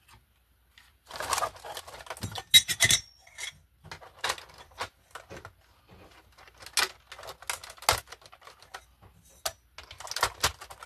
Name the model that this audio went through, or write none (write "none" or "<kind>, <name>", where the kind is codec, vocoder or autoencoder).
none